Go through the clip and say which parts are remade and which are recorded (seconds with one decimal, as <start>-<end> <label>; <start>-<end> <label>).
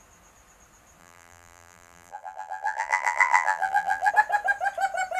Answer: 0.0-1.0 recorded; 1.0-4.1 remade; 4.1-5.2 recorded